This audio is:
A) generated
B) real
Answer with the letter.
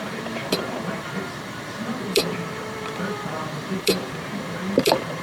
A